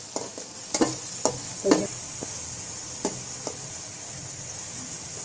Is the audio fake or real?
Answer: real